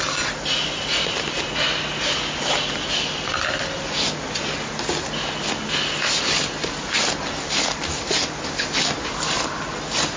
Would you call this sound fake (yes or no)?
no